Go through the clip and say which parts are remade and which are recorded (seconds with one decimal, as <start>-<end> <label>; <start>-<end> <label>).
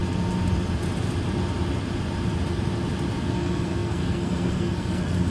0.0-3.2 recorded; 3.2-5.3 remade